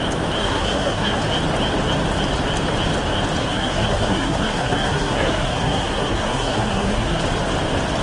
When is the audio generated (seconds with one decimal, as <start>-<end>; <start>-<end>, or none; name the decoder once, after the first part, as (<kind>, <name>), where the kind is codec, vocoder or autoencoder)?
0.4-1.2 (codec, SNAC); 3.4-7.2